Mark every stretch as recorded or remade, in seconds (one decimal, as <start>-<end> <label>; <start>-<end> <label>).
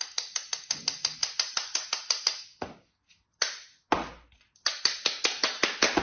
0.0-6.0 recorded